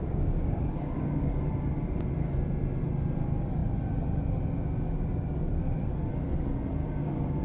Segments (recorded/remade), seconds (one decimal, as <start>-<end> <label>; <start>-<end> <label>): 0.0-1.3 remade; 1.3-6.8 recorded; 6.8-7.4 remade